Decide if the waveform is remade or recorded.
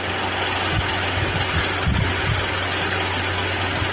recorded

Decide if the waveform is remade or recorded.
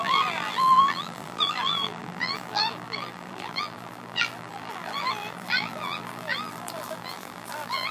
remade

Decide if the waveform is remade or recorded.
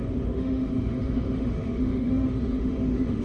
remade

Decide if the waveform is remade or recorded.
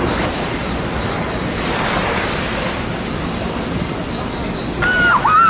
recorded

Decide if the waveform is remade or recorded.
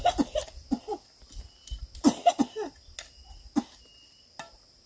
recorded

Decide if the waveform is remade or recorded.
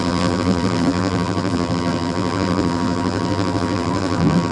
remade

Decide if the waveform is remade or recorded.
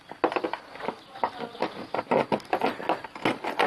recorded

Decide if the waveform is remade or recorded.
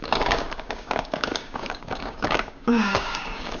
remade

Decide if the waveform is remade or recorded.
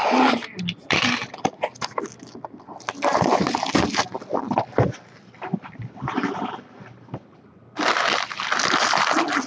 recorded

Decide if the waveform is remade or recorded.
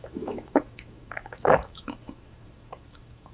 remade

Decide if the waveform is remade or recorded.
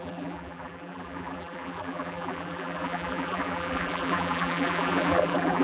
remade